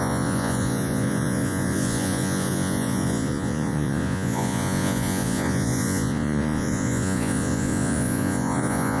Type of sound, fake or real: fake